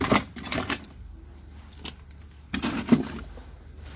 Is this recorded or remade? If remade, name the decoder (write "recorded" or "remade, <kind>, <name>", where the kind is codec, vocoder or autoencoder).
recorded